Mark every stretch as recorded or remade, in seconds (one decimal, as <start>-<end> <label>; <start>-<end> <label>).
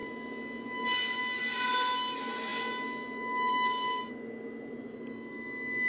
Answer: 0.0-5.9 recorded